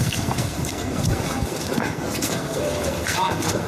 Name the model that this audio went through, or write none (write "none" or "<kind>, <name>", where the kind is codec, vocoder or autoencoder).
codec, SNAC